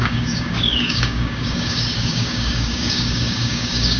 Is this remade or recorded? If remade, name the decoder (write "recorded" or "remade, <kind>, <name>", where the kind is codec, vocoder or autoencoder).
remade, codec, DAC